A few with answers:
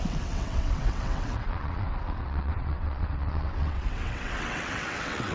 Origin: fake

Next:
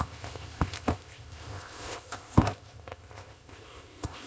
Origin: fake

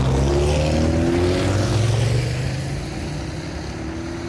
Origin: real